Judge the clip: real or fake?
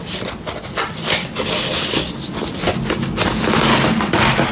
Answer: real